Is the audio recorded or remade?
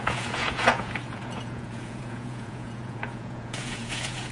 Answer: remade